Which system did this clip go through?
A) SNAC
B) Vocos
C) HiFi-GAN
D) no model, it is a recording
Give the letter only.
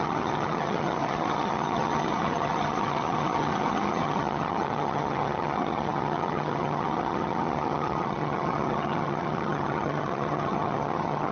C